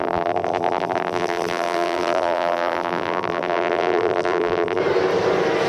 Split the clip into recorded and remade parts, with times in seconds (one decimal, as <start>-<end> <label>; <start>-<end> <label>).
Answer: 0.0-4.8 remade; 4.8-5.7 recorded